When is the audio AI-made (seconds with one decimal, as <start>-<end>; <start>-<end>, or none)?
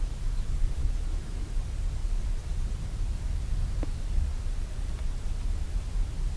0.8-1.4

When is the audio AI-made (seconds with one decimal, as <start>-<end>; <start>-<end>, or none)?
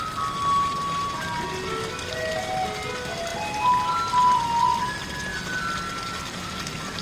none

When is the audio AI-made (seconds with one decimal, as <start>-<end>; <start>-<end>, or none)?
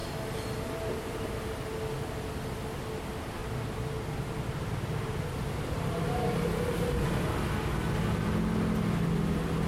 3.4-5.1